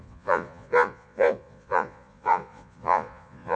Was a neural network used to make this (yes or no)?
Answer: yes